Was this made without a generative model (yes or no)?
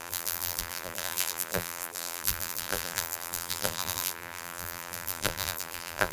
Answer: no